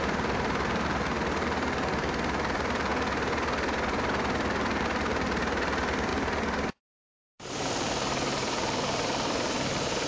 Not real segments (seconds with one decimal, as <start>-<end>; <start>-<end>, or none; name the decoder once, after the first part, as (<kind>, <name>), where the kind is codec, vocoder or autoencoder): 0.0-2.9 (vocoder, BigVGAN v2); 4.8-6.1; 6.7-10.1